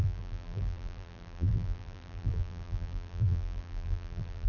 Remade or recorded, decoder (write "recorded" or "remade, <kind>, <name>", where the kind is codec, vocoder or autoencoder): remade, vocoder, BigVGAN v2